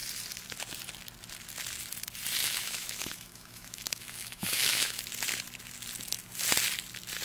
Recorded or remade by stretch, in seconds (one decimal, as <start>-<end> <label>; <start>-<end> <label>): 0.0-2.4 recorded; 2.4-5.0 remade; 5.0-7.2 recorded